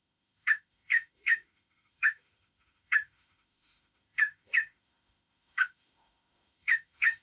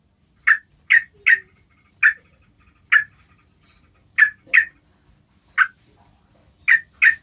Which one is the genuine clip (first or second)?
second